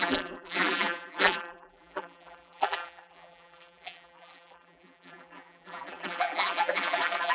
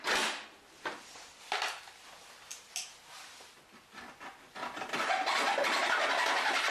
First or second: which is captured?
second